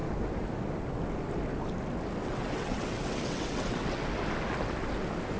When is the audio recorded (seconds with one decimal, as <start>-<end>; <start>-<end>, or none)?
0.0-2.2; 4.1-5.4